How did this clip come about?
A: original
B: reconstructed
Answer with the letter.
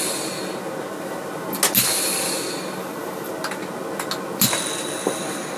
A